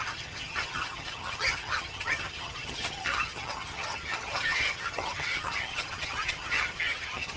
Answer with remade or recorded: remade